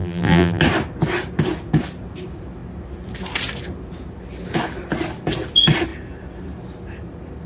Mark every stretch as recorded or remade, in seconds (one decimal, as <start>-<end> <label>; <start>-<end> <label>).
0.0-0.6 remade; 0.6-7.5 recorded